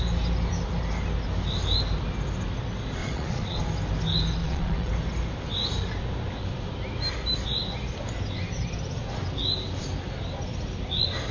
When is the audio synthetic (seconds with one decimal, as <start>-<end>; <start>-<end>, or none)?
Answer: 3.0-3.6; 4.4-4.9